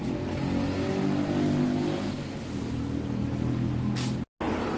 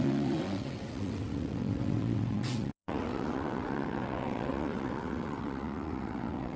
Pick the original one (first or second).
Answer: first